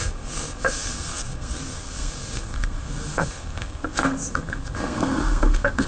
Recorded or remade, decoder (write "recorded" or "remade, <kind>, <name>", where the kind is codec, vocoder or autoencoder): remade, codec, SNAC